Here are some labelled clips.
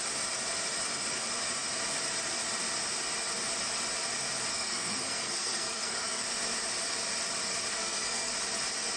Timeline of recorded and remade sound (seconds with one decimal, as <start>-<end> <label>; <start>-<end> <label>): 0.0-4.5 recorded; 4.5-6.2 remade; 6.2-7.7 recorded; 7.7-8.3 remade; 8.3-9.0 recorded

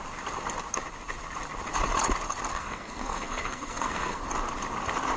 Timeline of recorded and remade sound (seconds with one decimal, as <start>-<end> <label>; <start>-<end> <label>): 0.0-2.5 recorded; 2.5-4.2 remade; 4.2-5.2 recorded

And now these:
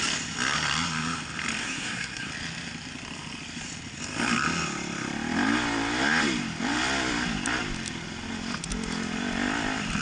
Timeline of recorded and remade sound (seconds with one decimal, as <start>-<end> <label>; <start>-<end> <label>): 0.0-1.6 recorded; 1.6-2.3 remade; 2.3-10.0 recorded

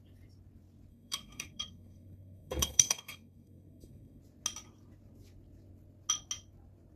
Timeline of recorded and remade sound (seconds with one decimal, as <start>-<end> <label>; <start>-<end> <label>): 0.0-0.9 recorded; 0.9-4.2 remade; 4.2-7.0 recorded